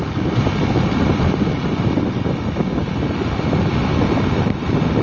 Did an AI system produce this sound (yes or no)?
no